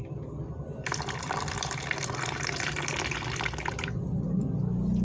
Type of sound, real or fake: real